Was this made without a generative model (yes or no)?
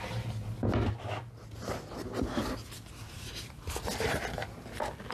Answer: yes